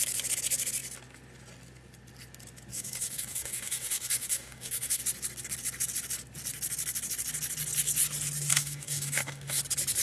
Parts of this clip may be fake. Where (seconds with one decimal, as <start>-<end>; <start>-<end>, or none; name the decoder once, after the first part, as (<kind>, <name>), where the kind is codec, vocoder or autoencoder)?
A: 2.7-5.0 (codec, DAC); 8.5-9.6